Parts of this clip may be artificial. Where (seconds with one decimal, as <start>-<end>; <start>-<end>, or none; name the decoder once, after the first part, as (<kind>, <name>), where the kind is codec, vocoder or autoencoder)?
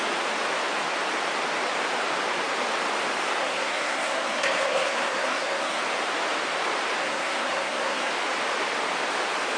3.4-5.8 (codec, SNAC); 7.0-8.1